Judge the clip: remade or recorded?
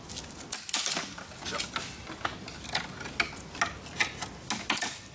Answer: recorded